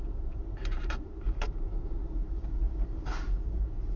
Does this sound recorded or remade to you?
remade